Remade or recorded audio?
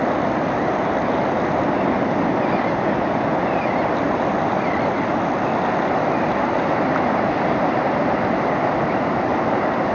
recorded